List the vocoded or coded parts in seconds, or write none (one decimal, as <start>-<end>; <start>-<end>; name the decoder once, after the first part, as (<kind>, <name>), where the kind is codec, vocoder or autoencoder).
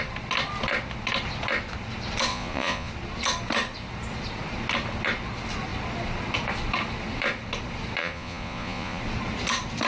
2.3-2.9 (vocoder, Vocos); 8.0-9.0